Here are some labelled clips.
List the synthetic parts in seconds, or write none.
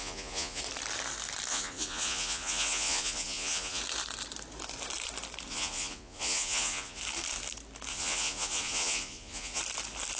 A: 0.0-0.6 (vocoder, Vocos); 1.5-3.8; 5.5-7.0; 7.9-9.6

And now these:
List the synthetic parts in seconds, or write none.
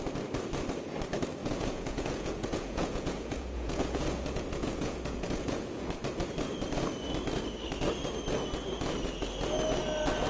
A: 1.4-6.0 (vocoder, Vocos)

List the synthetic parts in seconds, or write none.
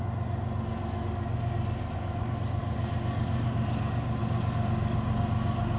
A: none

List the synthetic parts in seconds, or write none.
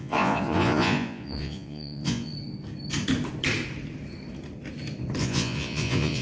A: 0.0-2.3 (vocoder, Vocos); 5.2-6.2